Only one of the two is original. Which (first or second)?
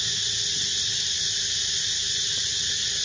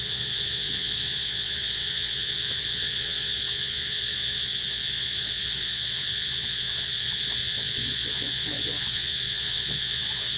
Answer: first